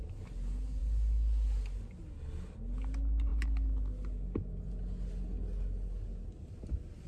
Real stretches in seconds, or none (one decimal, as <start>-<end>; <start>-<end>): 0.0-7.1